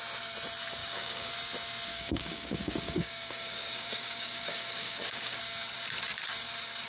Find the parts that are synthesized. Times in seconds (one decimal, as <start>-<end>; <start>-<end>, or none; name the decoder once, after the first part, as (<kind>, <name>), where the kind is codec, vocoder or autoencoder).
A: 0.8-1.3 (codec, DAC); 1.9-5.4